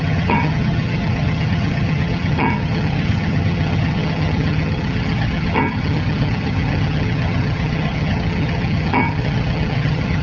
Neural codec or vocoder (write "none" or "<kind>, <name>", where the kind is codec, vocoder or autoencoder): vocoder, HiFi-GAN